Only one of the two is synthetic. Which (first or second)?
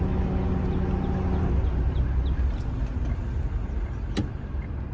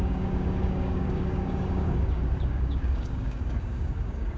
second